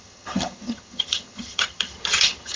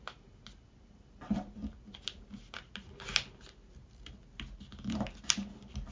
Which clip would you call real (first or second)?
second